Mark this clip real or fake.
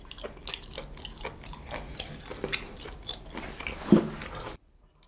real